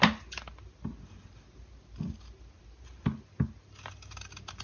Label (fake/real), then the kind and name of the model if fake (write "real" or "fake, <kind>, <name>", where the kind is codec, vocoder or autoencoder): real